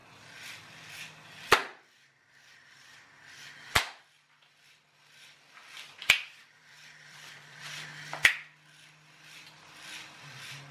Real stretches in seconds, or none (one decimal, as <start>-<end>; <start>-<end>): 1.6-3.8; 7.9-9.2